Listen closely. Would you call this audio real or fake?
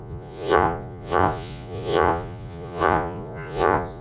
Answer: fake